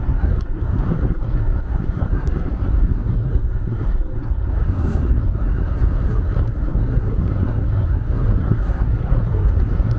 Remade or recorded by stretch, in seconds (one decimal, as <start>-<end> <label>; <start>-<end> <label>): 0.0-10.0 remade